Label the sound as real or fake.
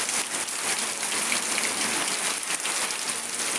real